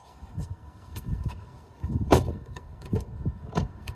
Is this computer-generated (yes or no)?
yes